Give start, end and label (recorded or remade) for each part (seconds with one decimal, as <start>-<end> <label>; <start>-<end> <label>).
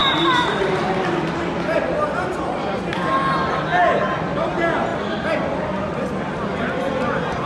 0.0-7.5 recorded